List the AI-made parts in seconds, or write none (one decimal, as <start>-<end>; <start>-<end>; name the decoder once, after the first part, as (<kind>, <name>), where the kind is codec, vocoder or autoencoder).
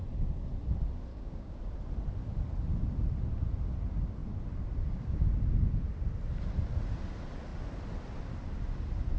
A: 1.1-1.6 (codec, DAC)